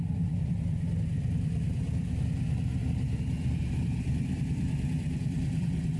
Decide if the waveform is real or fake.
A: fake